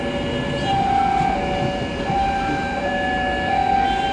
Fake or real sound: real